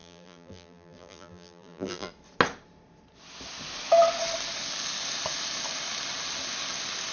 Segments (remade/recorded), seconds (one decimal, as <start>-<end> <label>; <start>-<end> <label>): 0.0-2.1 remade; 2.1-7.1 recorded